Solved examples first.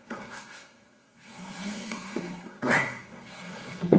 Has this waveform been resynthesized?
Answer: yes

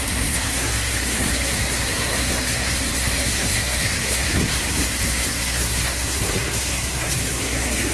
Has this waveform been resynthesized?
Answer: yes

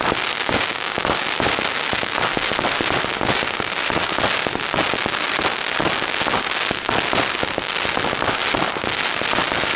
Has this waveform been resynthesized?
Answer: no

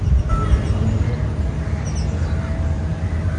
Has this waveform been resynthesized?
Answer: no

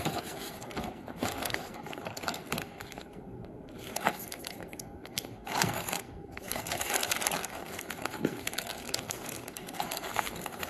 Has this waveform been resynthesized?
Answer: yes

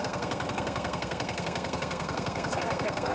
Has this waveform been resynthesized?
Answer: yes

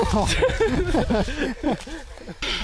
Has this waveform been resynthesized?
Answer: no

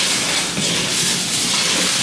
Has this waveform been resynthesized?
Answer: no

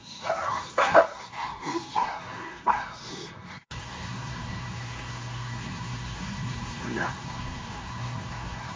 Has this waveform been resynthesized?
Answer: yes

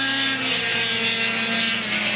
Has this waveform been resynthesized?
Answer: no